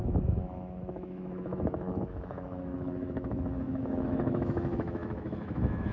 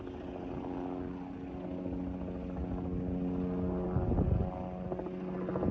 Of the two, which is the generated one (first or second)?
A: first